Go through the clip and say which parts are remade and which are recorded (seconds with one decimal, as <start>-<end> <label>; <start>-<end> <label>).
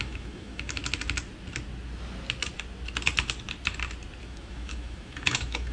0.0-0.8 remade; 0.8-4.2 recorded; 4.2-5.7 remade